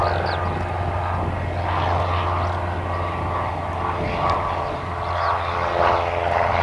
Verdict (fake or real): real